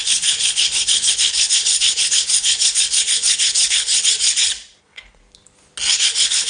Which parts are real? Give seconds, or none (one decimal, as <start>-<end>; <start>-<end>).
3.9-4.8; 5.2-5.9